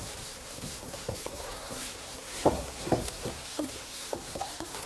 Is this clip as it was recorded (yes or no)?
no